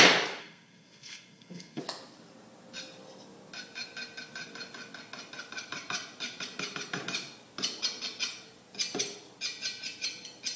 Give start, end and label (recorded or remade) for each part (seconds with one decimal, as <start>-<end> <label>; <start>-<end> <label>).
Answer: 0.0-0.4 recorded; 0.4-1.8 remade; 1.8-10.6 recorded